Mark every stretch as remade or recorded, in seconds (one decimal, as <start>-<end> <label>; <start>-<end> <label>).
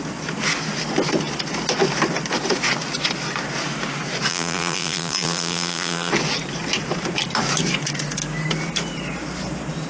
0.0-4.3 recorded; 4.3-6.1 remade; 6.1-9.9 recorded